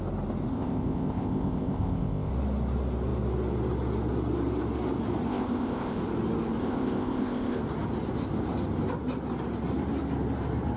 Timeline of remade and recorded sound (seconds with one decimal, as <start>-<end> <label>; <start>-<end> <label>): 0.0-0.5 recorded; 0.5-2.3 remade; 2.3-5.3 recorded; 5.3-6.0 remade; 6.0-6.6 recorded; 6.6-7.6 remade; 7.6-10.8 recorded